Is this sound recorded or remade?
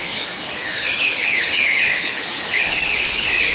remade